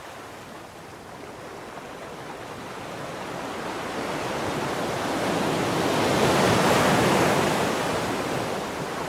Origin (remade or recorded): recorded